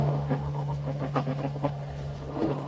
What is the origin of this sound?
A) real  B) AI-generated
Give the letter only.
B